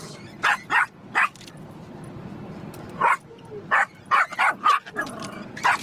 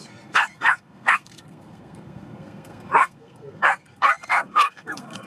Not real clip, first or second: second